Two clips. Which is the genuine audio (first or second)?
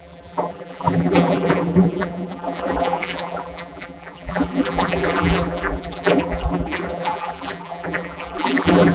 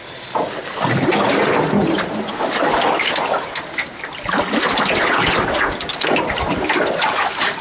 second